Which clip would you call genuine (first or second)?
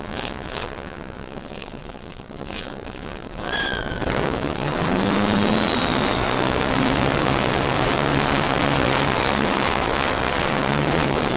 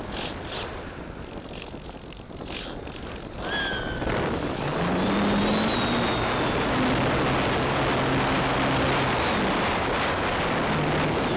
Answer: second